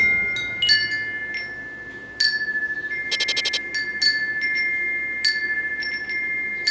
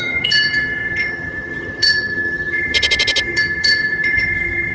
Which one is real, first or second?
first